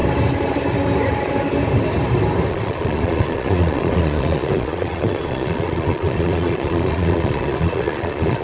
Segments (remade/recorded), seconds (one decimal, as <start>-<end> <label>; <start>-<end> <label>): 0.0-2.5 recorded; 2.5-8.4 remade

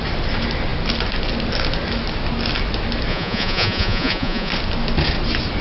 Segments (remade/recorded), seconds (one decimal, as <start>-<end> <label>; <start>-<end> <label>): 0.0-3.1 recorded; 3.1-4.5 remade; 4.5-5.6 recorded

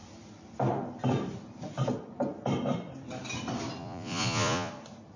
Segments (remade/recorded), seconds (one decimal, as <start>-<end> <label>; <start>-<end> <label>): 0.0-3.8 recorded; 3.8-4.7 remade; 4.7-5.2 recorded

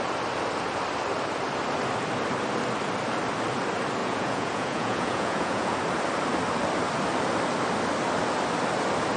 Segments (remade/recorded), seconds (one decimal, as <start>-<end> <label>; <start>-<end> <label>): 0.0-4.0 recorded; 4.0-5.8 remade; 5.8-9.2 recorded

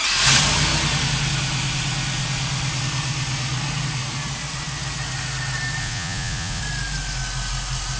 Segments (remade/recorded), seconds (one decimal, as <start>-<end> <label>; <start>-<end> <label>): 0.0-5.8 recorded; 5.8-6.6 remade; 6.6-8.0 recorded

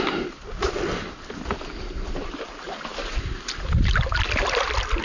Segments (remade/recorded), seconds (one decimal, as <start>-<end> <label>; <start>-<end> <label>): 0.0-5.0 recorded